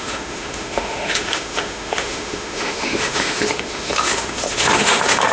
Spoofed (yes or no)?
yes